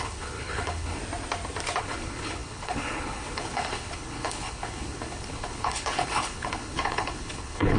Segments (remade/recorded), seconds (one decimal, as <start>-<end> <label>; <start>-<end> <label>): 0.0-1.0 remade; 1.0-1.8 recorded; 1.8-7.8 remade